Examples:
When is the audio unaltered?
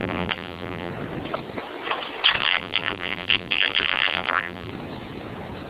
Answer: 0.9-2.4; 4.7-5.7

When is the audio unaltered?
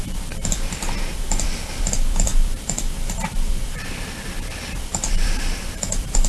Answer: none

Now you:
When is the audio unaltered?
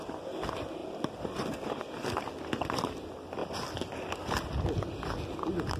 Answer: 0.0-0.8; 1.8-5.8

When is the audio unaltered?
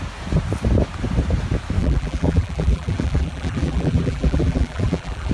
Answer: 0.0-1.8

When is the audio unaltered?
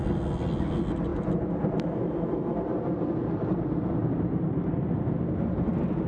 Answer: 0.0-6.1